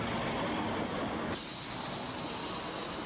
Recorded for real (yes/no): yes